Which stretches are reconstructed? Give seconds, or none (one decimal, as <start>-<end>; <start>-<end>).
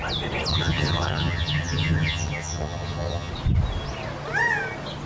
0.5-3.3